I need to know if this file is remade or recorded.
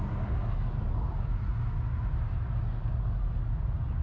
recorded